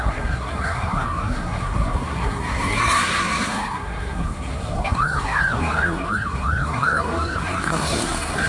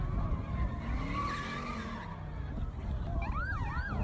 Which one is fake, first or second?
first